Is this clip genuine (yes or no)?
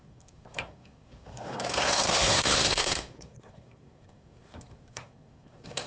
no